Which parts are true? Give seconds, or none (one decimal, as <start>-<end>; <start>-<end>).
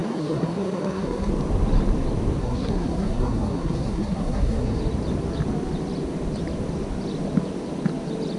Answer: 1.3-2.4; 4.8-8.4